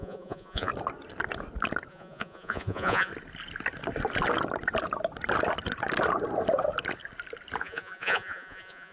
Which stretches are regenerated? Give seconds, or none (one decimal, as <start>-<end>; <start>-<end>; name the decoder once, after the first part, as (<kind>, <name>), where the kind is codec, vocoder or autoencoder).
0.0-0.7 (vocoder, Vocos); 1.9-3.1; 7.6-8.9